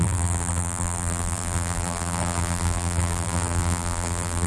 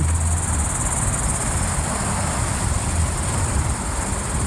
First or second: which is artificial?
first